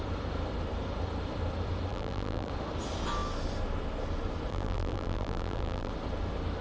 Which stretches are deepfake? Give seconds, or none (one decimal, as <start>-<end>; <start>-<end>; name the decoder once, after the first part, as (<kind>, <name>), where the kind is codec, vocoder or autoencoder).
1.9-2.5 (vocoder, BigVGAN v2); 4.5-5.9